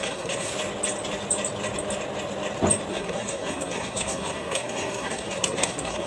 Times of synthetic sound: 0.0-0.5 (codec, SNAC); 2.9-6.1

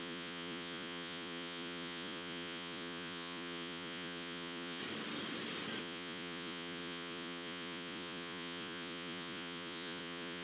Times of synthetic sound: 0.0-4.8 (vocoder, Vocos); 5.8-10.4

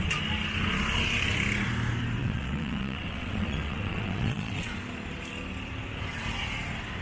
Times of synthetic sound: 2.2-4.7 (vocoder, WaveNeXt)

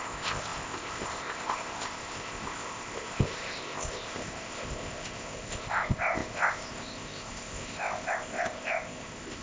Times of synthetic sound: 0.0-9.4 (codec, ZipCodec)

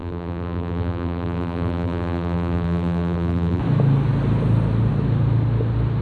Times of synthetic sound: 0.0-3.6 (vocoder, BigVGAN v2)

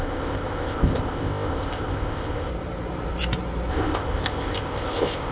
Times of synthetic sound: 0.0-2.5 (codec, ZipCodec); 3.7-5.3